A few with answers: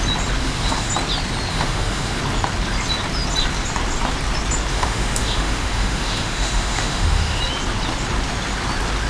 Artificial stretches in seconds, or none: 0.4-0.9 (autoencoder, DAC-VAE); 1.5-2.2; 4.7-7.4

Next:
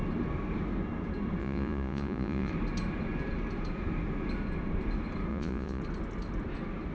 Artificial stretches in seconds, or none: 1.4-2.5 (vocoder, Vocos); 5.3-5.8